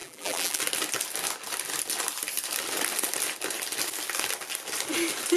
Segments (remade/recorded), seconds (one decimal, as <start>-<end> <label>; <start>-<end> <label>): 0.0-0.6 remade; 0.6-5.4 recorded